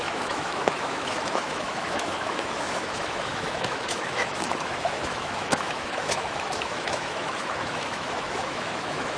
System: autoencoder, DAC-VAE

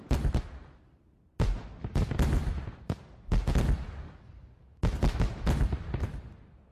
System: none